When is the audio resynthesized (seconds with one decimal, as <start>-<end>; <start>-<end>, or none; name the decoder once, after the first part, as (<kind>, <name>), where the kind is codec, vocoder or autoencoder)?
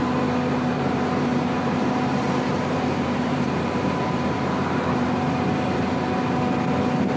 1.3-4.7 (vocoder, BigVGAN v2)